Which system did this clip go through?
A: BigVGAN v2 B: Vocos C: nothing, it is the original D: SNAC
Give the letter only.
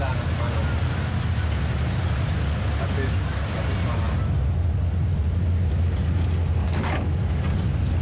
C